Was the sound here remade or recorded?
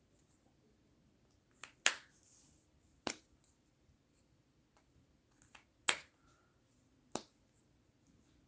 recorded